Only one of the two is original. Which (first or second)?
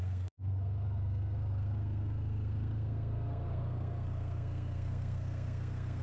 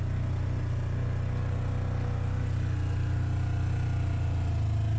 second